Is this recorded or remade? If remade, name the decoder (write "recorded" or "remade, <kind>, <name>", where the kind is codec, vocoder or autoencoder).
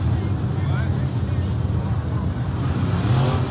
recorded